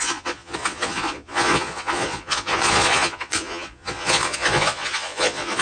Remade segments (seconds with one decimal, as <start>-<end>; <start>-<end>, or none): 0.0-5.6